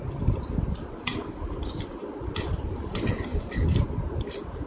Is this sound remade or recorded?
recorded